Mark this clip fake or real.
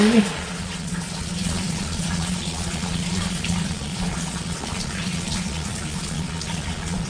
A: fake